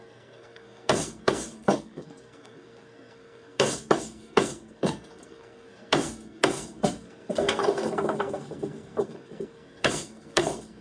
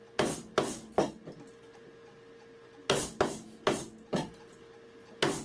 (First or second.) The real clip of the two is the second